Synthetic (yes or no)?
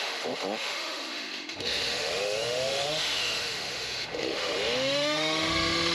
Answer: yes